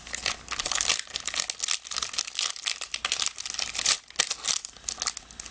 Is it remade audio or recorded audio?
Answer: recorded